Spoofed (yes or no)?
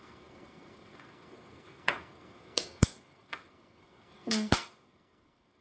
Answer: yes